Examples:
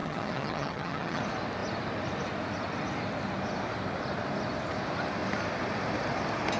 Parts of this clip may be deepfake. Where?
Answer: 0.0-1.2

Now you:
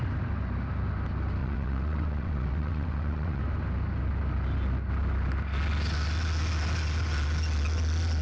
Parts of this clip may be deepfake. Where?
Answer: 1.4-3.4

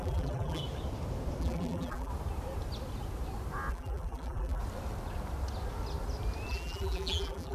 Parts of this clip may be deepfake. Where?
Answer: 0.0-0.6; 1.4-2.1; 3.7-4.6; 6.5-7.5

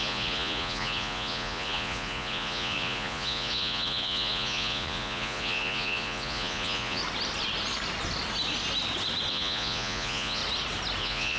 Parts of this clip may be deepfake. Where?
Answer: 0.0-7.0; 9.3-10.4; 11.0-11.4